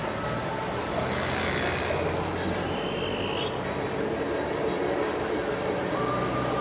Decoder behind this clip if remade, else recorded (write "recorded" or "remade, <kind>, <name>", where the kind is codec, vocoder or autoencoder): recorded